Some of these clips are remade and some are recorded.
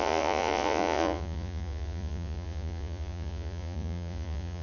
remade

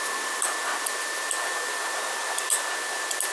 recorded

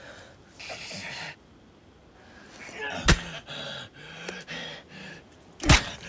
recorded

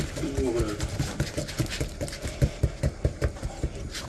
recorded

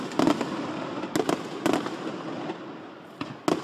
recorded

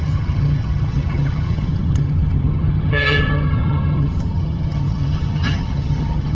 remade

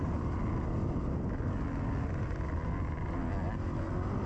recorded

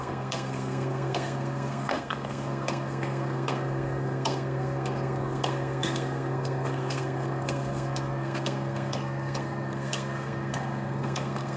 remade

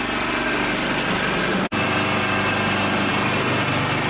recorded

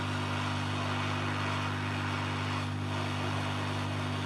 recorded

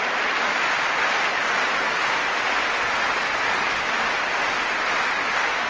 recorded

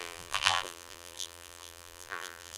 remade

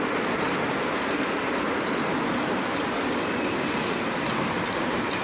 recorded